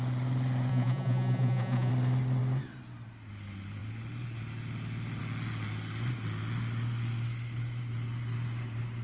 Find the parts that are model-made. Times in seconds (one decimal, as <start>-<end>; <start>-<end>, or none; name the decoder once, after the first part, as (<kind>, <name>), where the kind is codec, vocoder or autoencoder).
0.7-1.9 (vocoder, Vocos)